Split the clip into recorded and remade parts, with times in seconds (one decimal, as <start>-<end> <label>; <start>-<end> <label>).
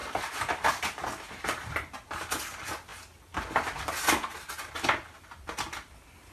0.0-6.3 recorded